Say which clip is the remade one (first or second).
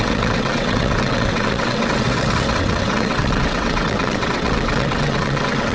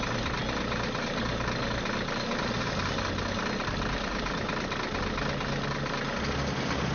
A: first